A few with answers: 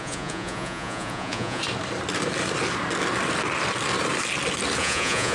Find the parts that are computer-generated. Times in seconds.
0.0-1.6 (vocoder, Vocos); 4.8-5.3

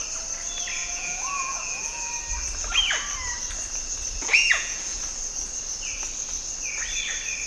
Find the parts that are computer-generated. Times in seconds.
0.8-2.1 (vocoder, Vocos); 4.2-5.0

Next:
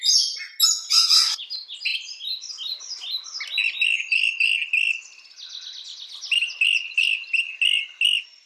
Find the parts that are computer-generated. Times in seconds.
none

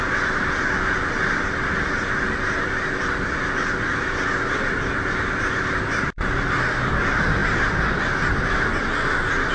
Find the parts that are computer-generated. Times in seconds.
none

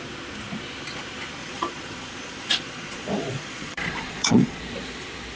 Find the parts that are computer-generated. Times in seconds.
1.4-4.6 (vocoder, Vocos)